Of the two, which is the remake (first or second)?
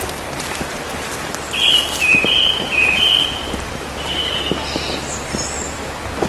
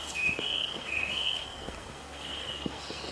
second